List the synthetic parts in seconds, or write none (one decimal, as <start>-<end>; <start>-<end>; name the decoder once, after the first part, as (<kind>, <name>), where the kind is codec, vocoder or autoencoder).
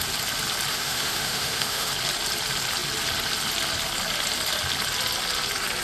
0.7-1.9 (autoencoder, DAC-VAE)